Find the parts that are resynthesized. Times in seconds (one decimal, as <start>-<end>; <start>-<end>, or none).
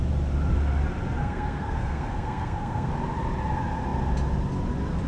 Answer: 1.2-2.9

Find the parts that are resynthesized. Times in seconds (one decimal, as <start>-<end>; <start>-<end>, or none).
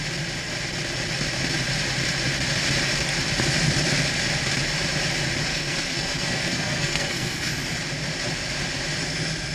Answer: 5.5-7.5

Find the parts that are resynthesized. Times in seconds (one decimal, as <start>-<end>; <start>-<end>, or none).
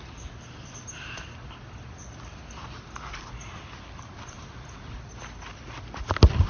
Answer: none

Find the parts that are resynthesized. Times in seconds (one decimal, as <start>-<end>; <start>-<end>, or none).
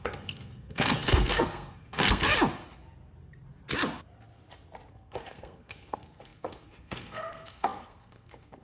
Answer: 0.0-2.3; 4.9-8.6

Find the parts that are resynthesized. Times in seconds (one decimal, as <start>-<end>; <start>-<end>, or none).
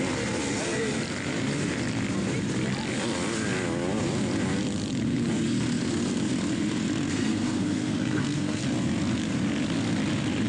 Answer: 7.1-8.6